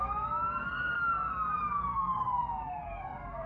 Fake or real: fake